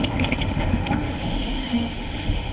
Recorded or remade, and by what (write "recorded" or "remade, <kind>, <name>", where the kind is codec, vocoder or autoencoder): remade, autoencoder, DAC-VAE